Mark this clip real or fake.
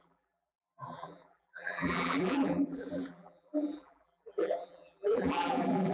fake